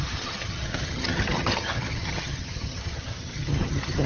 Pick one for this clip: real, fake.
fake